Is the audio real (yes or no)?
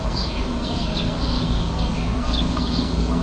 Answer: no